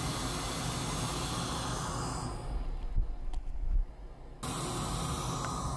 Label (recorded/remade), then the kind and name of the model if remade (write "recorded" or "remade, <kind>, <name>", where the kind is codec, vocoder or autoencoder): recorded